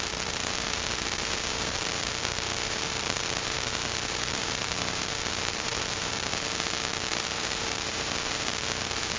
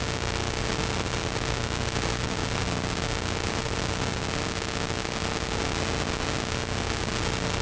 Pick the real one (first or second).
second